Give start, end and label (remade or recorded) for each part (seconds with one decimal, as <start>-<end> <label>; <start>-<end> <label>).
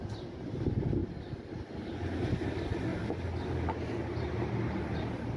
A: 0.0-5.4 recorded